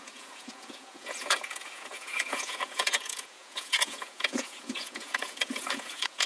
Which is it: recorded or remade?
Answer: remade